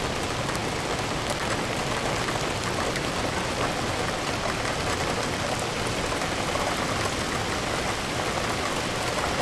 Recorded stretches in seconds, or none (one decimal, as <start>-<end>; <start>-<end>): 0.0-9.4